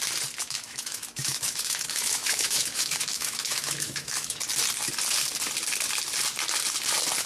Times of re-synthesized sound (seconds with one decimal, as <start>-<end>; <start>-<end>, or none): 0.4-4.4